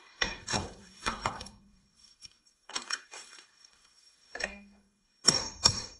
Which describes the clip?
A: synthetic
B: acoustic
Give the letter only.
A